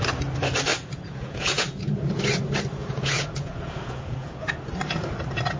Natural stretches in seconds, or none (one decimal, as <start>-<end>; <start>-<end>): 0.0-0.7; 2.2-2.8; 4.5-5.6

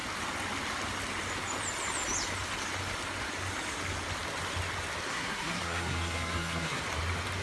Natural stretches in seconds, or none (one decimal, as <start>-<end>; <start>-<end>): 0.0-5.1; 6.8-7.4

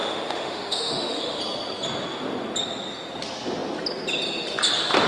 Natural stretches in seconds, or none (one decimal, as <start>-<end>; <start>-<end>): 1.4-5.1

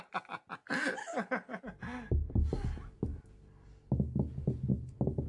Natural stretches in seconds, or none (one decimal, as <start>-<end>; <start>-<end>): 0.0-1.0; 1.6-5.3